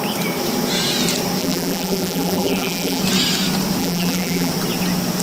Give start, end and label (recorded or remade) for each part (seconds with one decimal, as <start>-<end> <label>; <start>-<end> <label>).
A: 0.0-1.4 recorded; 1.4-3.0 remade; 3.0-3.8 recorded; 3.8-4.5 remade; 4.5-5.2 recorded